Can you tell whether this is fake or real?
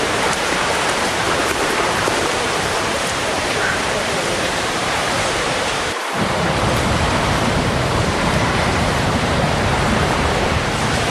fake